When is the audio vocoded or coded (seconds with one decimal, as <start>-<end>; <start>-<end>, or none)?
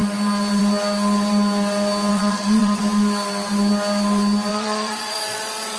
2.1-2.8; 4.5-5.8